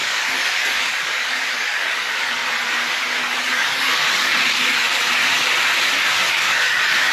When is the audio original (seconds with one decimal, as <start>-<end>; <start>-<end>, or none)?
2.4-2.9; 4.3-6.3

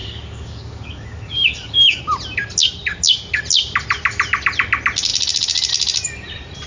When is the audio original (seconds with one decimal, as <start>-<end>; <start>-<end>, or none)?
2.0-6.7

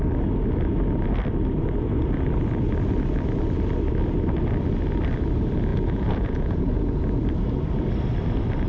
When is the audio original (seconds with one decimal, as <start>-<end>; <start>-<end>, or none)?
0.0-5.7; 7.0-8.7

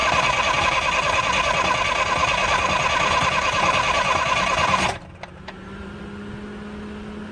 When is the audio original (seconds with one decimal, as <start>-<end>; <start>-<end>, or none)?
0.6-2.2; 6.0-7.3

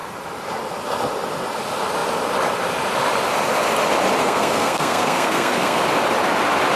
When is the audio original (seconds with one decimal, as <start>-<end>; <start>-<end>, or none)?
0.0-4.2; 5.8-6.8

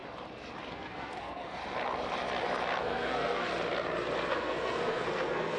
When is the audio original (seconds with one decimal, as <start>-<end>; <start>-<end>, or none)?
0.0-0.7; 1.6-2.8; 3.5-4.3